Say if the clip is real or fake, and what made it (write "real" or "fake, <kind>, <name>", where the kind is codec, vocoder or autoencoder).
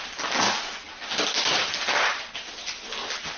real